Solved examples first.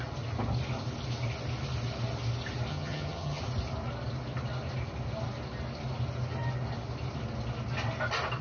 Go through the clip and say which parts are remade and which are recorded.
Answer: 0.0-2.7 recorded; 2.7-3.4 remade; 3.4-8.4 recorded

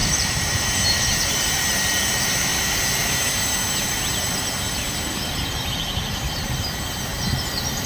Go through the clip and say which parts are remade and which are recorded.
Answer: 0.0-7.9 remade

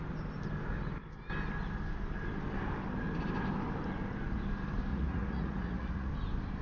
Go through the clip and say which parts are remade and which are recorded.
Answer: 0.0-4.9 recorded; 4.9-6.1 remade; 6.1-6.6 recorded

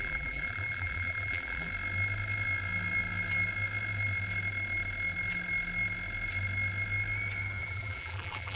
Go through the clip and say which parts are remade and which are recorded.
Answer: 0.0-1.7 remade; 1.7-7.6 recorded; 7.6-8.6 remade

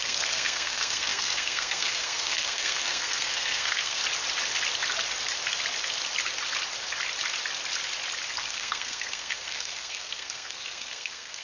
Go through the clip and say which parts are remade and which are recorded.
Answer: 0.0-4.0 remade; 4.0-8.4 recorded; 8.4-11.4 remade

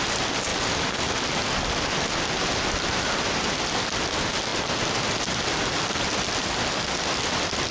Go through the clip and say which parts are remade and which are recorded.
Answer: 0.0-7.7 recorded